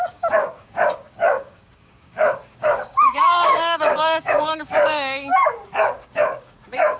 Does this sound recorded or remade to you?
remade